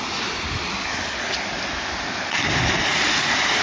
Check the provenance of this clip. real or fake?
real